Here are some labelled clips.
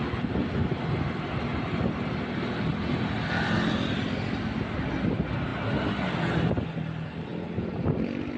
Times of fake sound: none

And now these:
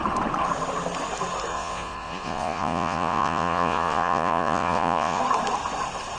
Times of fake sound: 1.5-5.2 (vocoder, Vocos)

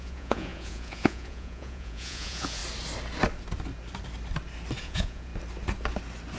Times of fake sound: 0.0-2.6 (vocoder, Vocos); 4.8-5.3